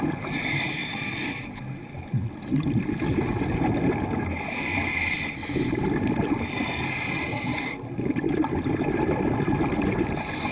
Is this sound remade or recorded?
recorded